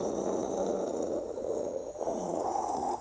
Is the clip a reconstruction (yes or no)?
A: yes